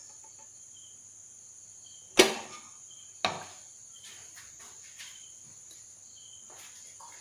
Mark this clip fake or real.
real